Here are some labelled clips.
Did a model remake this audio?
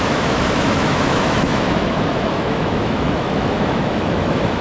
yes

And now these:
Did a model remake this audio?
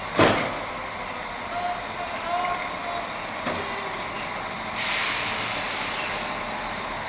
no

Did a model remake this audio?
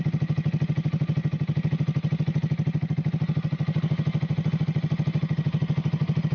no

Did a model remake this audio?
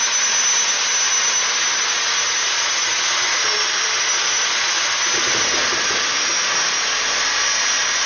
no